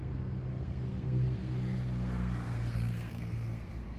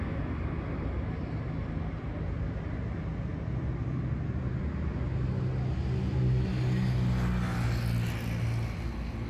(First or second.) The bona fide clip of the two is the second